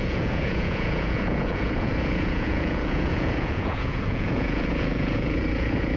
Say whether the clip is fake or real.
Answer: fake